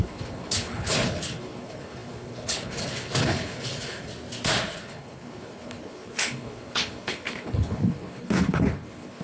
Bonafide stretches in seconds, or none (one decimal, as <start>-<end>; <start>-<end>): 4.1-4.7